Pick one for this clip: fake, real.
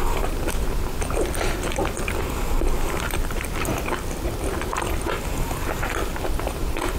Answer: fake